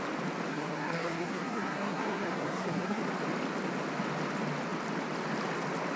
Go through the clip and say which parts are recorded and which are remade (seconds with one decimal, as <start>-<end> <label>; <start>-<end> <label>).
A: 0.0-0.5 recorded; 0.5-3.0 remade; 3.0-6.0 recorded